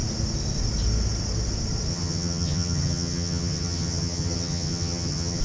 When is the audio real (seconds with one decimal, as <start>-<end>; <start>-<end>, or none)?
0.0-1.9